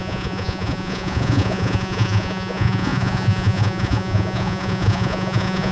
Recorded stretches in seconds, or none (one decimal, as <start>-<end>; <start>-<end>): none